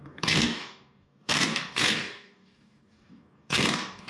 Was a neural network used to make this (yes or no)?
yes